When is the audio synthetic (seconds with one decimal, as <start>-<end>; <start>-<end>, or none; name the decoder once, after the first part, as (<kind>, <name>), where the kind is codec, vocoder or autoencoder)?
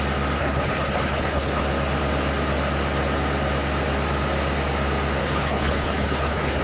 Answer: 0.4-1.6 (codec, HILCodec); 5.2-6.6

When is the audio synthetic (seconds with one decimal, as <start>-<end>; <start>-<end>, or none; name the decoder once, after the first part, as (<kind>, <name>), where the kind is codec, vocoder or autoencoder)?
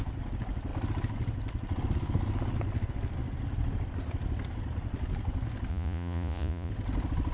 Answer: 5.7-6.7 (vocoder, Vocos)